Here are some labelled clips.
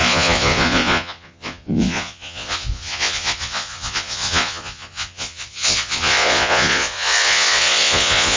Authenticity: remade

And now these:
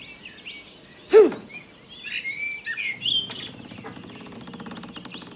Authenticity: recorded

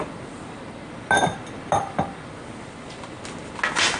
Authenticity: recorded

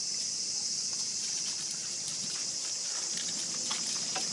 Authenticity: recorded